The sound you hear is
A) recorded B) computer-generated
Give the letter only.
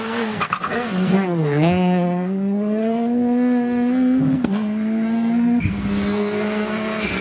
B